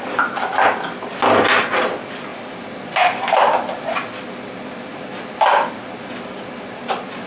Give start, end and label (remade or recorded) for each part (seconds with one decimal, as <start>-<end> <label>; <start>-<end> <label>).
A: 0.0-7.3 recorded

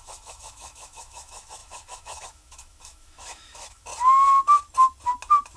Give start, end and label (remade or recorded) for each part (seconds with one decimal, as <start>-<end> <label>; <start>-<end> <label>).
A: 0.0-3.9 remade; 3.9-5.6 recorded